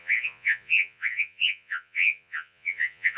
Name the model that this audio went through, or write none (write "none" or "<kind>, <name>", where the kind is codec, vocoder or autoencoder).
vocoder, Vocos